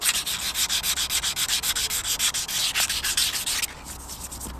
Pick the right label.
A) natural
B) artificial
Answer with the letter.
A